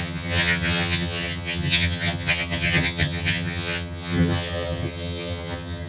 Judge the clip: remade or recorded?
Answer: remade